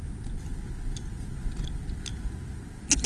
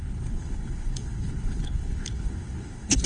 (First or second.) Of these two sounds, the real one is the first